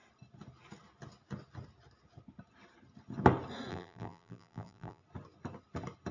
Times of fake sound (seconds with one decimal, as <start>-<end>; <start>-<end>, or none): 3.7-5.0

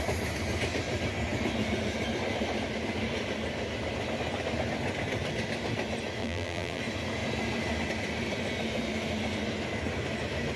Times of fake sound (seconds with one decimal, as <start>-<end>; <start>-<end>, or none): 6.2-6.8

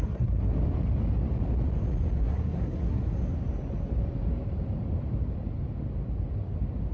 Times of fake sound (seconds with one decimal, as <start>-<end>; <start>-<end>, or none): 0.0-0.6; 2.2-3.0